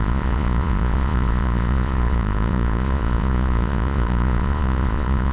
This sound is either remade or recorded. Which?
remade